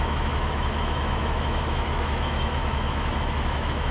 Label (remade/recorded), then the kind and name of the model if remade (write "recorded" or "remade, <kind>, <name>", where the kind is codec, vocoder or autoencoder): remade, autoencoder, DAC-VAE